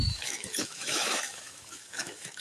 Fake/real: fake